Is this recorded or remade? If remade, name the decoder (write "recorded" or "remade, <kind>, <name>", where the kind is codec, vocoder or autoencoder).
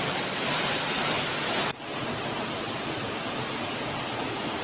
recorded